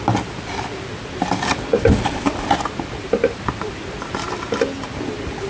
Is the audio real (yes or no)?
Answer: yes